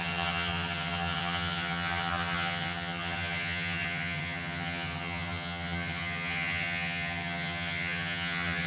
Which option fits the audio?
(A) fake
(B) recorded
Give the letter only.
A